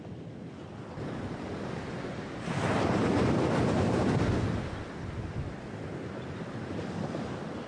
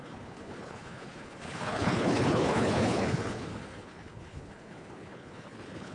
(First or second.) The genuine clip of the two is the first